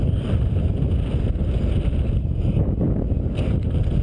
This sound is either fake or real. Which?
real